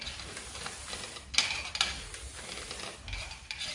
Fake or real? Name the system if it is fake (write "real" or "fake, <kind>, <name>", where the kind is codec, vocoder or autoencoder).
real